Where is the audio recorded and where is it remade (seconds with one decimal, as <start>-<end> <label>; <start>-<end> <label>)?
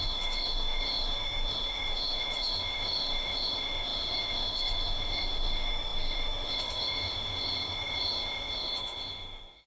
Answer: 0.0-9.7 remade